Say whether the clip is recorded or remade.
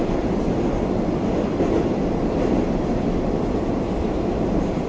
recorded